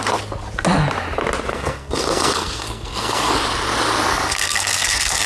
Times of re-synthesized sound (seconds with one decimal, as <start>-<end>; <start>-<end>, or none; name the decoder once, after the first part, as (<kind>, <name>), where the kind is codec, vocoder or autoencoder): 1.5-3.3 (codec, SNAC); 4.1-5.3